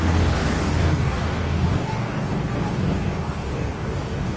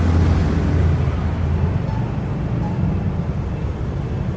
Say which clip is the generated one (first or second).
first